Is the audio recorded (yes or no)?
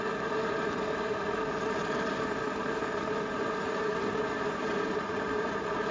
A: yes